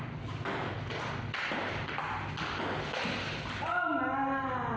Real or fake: real